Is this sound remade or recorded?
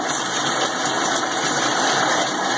remade